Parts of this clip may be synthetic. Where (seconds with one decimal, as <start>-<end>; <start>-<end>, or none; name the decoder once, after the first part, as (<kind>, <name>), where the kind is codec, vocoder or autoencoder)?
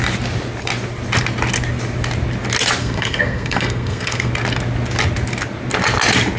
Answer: 2.8-4.3 (codec, SNAC)